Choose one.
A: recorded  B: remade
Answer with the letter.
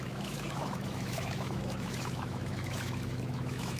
B